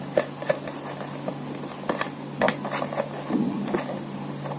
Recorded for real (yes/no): yes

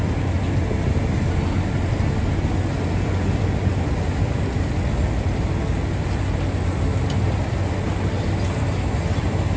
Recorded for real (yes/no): yes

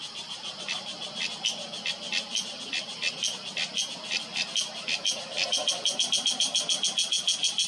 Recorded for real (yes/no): yes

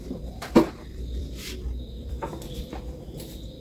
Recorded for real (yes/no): no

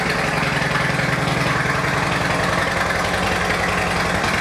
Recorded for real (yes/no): yes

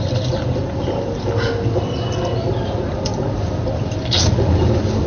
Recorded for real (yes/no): no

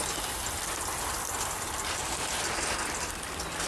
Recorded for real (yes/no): yes